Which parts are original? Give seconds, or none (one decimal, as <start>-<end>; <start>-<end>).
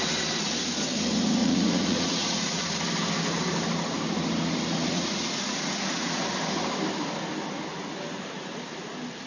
0.0-1.4; 2.6-4.9; 6.2-9.3